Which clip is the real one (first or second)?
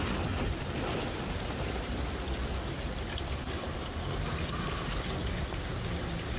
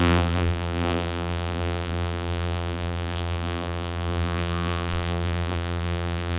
first